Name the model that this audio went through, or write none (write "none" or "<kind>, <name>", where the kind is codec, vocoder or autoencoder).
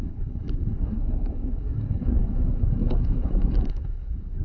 codec, SNAC